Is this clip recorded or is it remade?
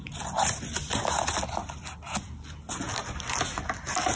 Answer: recorded